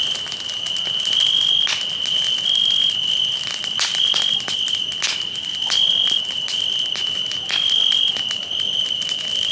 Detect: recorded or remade recorded